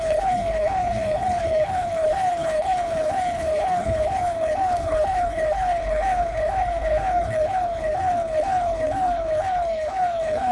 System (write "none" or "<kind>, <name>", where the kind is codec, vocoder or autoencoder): codec, HILCodec